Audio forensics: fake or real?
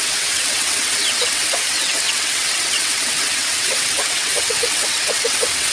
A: fake